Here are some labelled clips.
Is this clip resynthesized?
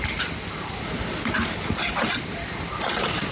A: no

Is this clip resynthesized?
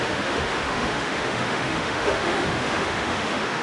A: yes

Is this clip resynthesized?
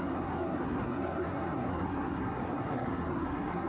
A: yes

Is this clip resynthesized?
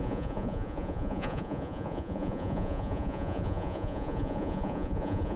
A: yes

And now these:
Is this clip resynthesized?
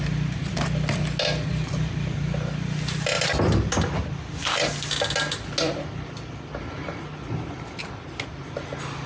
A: no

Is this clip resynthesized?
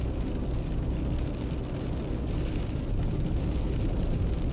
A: no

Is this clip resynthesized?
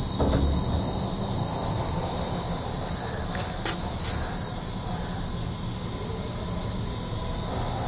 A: no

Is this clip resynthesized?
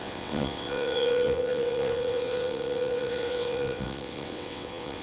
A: yes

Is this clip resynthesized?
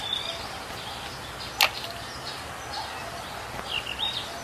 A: no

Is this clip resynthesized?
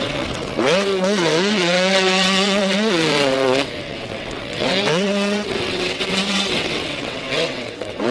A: yes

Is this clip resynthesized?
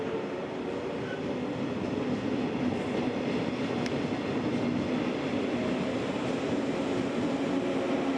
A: no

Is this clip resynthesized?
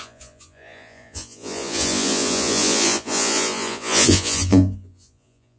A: yes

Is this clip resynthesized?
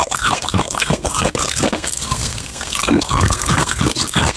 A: yes